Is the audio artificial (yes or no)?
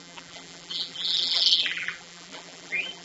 yes